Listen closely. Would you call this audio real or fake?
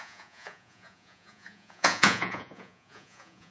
fake